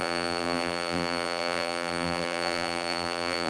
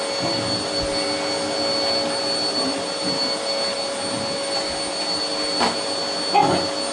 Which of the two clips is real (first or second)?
second